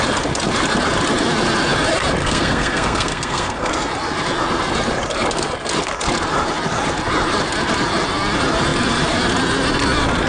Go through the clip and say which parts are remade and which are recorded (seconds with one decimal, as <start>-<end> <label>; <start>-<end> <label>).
0.0-2.2 recorded; 2.2-3.7 remade; 3.7-10.3 recorded

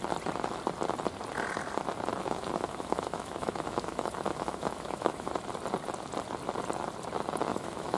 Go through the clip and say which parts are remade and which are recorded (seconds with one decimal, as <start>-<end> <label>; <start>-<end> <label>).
0.0-2.2 recorded; 2.2-5.3 remade; 5.3-7.5 recorded; 7.5-8.0 remade

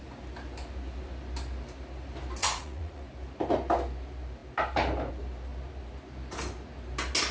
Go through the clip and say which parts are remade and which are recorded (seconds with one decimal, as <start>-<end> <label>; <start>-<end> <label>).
0.0-2.4 recorded; 2.4-3.0 remade; 3.0-7.3 recorded

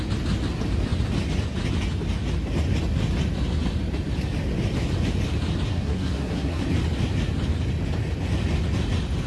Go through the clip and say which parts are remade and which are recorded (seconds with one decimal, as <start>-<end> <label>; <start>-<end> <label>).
0.0-5.7 recorded; 5.7-6.6 remade; 6.6-9.3 recorded

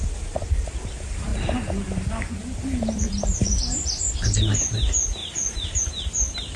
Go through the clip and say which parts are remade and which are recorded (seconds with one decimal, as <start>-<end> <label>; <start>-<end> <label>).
0.0-1.3 remade; 1.3-2.4 recorded; 2.4-6.6 remade